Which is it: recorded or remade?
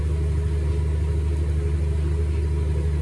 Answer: recorded